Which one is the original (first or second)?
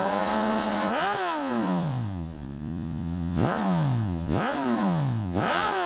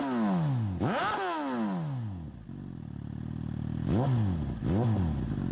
second